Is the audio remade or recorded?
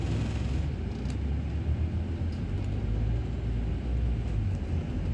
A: recorded